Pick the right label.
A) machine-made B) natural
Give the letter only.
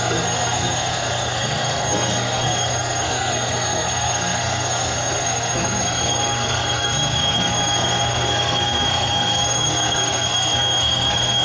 A